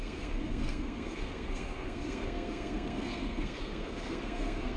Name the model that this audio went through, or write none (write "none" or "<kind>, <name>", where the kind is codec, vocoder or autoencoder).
codec, SNAC